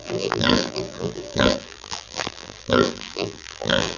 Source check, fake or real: fake